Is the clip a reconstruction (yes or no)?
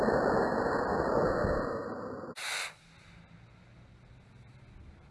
no